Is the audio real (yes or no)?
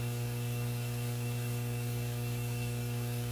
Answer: no